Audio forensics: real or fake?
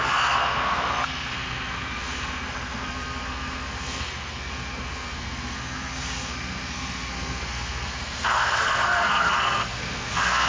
fake